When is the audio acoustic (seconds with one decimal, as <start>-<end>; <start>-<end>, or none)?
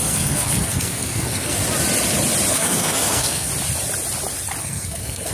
1.6-2.5; 3.5-4.6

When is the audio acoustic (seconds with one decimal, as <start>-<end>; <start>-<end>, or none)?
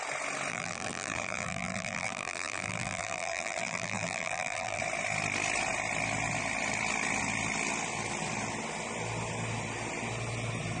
0.0-0.5; 4.8-10.8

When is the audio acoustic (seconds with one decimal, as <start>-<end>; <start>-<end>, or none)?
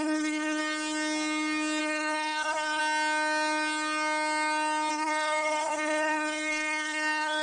0.6-1.8; 2.8-4.9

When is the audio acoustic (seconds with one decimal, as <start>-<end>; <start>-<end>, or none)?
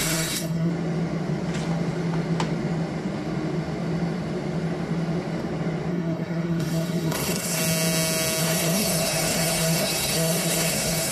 0.7-5.9; 7.6-8.4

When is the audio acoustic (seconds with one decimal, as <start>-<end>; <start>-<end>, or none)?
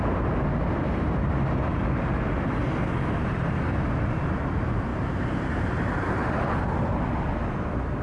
0.0-1.7; 3.3-4.9; 6.2-8.0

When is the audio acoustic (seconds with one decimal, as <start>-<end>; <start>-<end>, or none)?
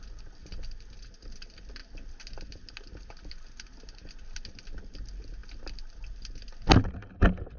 0.0-7.6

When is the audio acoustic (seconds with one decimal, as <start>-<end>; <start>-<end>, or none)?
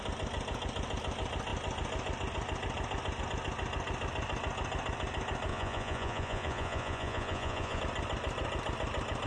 0.0-5.5; 7.8-9.3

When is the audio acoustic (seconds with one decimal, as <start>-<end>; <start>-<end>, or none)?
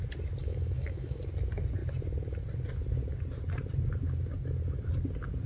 0.0-0.4; 1.2-5.5